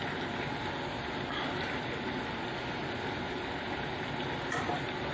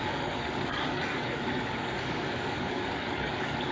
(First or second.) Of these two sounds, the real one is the first